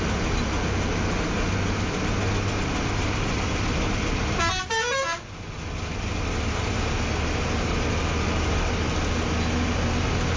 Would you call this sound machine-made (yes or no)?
no